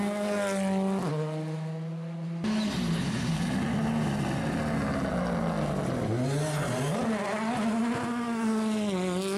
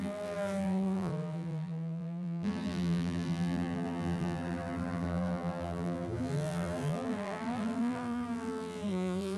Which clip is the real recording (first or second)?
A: first